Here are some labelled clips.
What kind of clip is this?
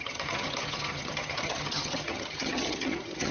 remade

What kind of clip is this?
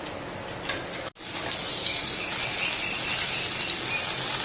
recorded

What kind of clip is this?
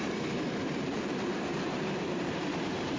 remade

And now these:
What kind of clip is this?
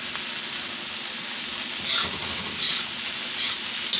recorded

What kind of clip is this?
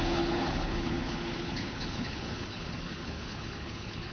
remade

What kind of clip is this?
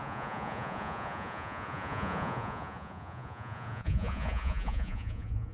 remade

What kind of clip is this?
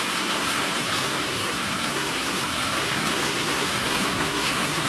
remade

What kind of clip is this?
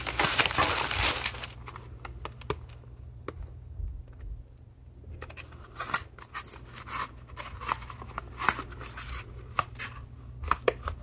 recorded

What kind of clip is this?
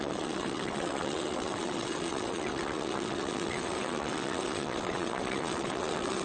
remade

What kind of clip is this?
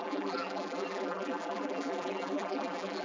remade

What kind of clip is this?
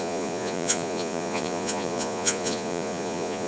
remade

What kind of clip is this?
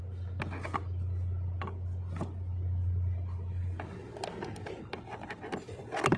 recorded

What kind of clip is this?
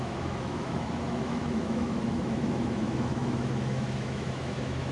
remade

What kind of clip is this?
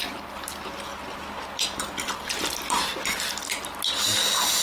recorded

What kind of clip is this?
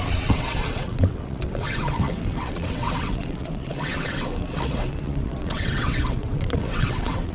remade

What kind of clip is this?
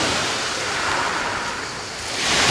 recorded